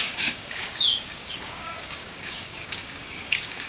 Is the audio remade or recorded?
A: remade